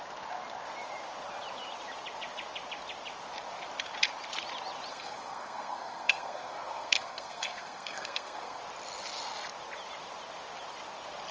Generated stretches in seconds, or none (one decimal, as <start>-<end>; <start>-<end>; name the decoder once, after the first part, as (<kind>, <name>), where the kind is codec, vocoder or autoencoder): 4.9-8.6 (codec, SNAC)